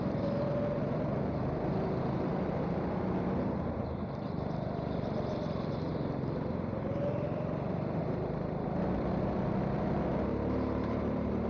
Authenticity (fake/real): real